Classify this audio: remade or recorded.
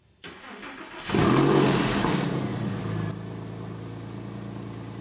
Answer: recorded